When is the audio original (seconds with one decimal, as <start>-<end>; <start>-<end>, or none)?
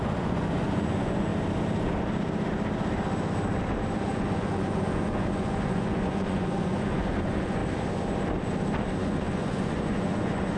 1.3-4.0; 7.6-9.0